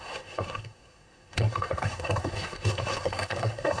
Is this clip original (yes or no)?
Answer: no